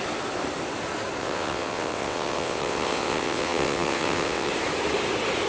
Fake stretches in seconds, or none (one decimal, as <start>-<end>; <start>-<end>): 1.2-4.5